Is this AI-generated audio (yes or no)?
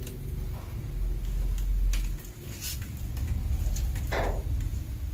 no